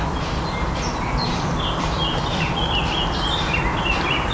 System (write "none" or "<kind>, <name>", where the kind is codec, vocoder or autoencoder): none